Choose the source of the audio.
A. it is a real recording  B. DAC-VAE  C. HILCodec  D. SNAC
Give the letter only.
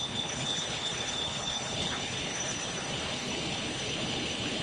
C